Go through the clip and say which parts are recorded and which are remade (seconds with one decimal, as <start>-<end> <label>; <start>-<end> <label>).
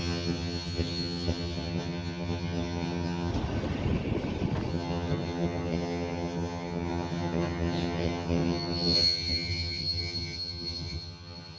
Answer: 0.0-3.3 remade; 3.3-4.7 recorded; 4.7-11.6 remade